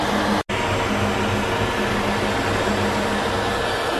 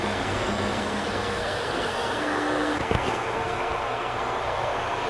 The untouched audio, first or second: first